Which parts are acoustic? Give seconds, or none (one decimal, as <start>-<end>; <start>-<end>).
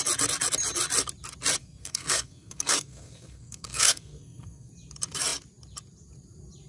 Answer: 0.0-1.6; 4.7-6.7